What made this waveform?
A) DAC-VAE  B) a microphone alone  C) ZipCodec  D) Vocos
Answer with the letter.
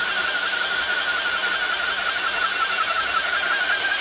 B